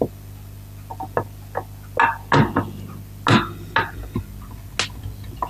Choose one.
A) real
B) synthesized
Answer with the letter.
A